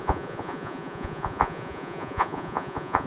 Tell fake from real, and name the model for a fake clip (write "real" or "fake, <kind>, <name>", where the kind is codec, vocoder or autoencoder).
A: fake, vocoder, Vocos